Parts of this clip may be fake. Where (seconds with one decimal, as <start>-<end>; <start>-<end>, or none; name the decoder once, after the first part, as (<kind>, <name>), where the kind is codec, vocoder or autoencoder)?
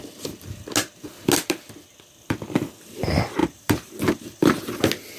3.4-4.6 (vocoder, BigVGAN v2)